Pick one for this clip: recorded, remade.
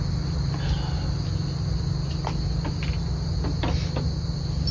recorded